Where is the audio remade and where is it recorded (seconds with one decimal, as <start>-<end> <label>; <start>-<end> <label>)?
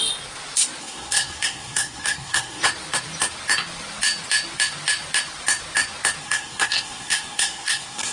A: 0.0-0.8 recorded; 0.8-2.6 remade; 2.6-6.2 recorded; 6.2-8.1 remade